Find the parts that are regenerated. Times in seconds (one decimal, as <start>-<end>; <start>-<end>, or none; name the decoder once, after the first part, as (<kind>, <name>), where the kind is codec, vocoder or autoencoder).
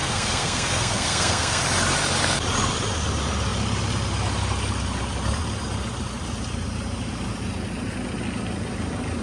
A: 0.0-1.6 (codec, SNAC)